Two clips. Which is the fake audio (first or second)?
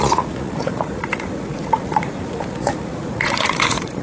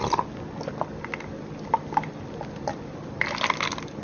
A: first